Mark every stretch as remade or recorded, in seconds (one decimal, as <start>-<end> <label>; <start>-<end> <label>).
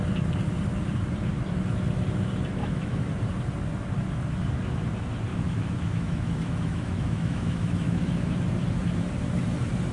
0.0-2.6 recorded; 2.6-3.1 remade; 3.1-5.3 recorded; 5.3-8.3 remade; 8.3-9.9 recorded